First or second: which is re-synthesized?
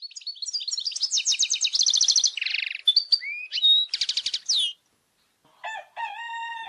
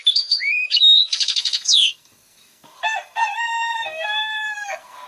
second